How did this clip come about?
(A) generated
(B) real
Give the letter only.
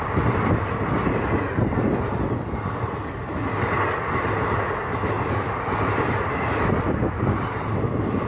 B